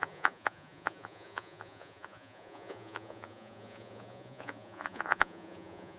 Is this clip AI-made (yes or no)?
yes